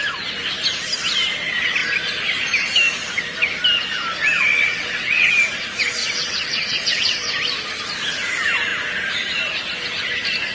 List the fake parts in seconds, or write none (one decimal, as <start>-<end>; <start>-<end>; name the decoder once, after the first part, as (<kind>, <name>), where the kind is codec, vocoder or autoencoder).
4.5-5.3 (vocoder, WaveNeXt); 6.0-7.3

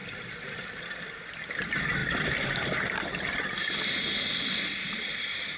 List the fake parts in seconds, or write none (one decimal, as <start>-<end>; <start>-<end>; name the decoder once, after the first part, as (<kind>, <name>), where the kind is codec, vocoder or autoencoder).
0.0-1.3 (vocoder, BigVGAN v2); 2.0-5.6

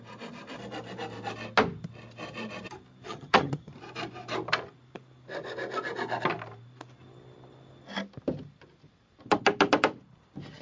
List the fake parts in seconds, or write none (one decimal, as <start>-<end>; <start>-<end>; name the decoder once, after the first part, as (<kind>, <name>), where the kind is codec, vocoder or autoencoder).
3.1-3.7 (vocoder, HiFi-GAN)

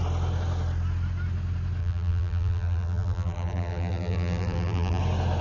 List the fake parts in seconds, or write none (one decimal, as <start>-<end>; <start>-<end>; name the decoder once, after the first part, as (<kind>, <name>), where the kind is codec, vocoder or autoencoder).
1.8-5.0 (vocoder, BigVGAN v2)

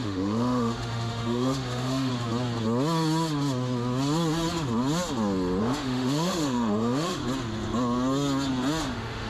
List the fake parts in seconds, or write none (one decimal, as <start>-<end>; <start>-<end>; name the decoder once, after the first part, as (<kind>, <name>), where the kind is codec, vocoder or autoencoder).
0.0-2.1 (autoencoder, DAC-VAE); 5.6-7.2; 8.8-9.3

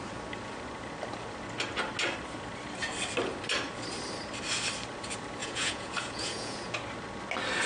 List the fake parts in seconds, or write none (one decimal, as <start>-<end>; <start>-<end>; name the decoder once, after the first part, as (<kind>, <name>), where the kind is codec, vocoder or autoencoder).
5.4-6.7 (vocoder, Vocos)

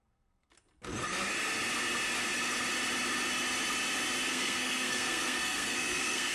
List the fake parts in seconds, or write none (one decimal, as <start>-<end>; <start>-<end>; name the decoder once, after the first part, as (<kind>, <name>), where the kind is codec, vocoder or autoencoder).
0.0-0.5 (codec, SNAC); 4.3-6.3